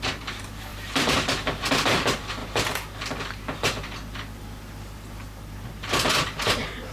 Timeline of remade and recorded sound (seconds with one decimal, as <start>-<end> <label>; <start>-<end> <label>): 0.0-0.7 recorded; 0.7-1.7 remade; 1.7-6.9 recorded